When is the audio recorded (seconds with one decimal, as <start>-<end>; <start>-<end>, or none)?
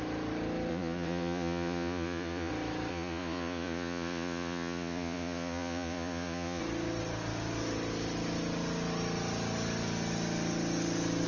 0.0-0.7; 2.5-2.9; 6.6-11.3